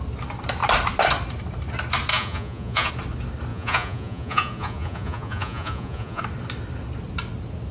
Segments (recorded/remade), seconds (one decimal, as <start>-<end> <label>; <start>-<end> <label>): 0.0-2.1 recorded; 2.1-2.9 remade; 2.9-3.5 recorded; 3.5-6.2 remade; 6.2-7.7 recorded